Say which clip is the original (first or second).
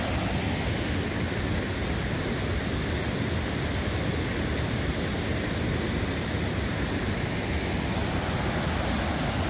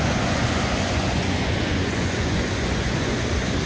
first